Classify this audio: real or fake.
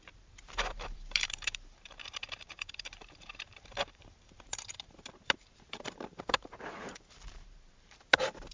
fake